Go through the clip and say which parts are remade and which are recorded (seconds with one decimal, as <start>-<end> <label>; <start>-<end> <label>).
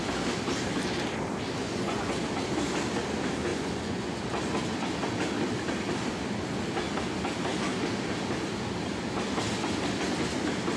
0.0-1.6 recorded; 1.6-2.2 remade; 2.2-3.5 recorded; 3.5-4.2 remade; 4.2-10.8 recorded